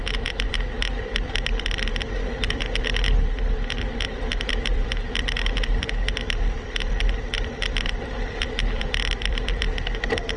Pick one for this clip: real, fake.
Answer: fake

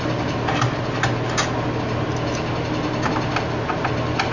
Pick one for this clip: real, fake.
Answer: real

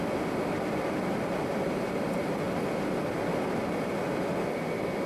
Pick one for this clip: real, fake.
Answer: real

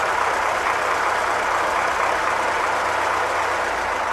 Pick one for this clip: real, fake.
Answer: real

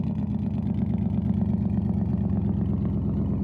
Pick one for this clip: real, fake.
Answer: real